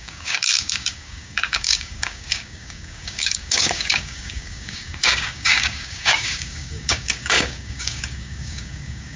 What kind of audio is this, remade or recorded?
remade